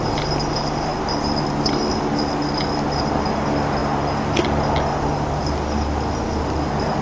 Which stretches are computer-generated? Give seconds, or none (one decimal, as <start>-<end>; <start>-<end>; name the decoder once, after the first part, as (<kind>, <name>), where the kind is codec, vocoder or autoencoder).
none